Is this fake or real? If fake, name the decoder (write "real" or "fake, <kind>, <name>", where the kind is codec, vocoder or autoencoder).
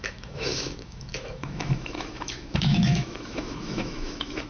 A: fake, autoencoder, DAC-VAE